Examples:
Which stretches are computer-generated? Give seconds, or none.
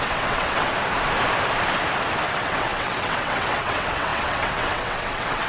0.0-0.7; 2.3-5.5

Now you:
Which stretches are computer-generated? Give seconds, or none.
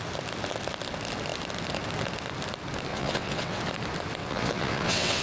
2.9-3.6; 4.2-5.2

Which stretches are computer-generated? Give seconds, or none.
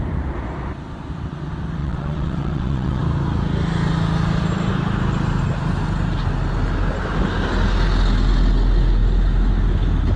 1.8-3.0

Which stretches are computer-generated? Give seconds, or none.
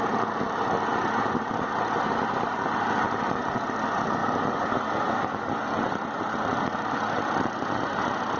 none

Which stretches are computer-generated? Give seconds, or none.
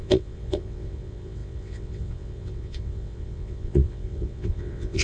0.0-5.0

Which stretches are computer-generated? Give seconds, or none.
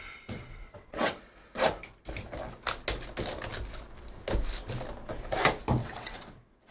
0.5-1.2; 5.8-6.7